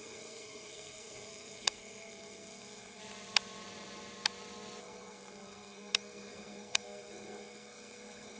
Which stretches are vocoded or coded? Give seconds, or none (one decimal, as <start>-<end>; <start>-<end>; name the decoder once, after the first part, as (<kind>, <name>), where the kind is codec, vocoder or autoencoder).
0.0-3.0 (codec, SNAC); 4.8-8.4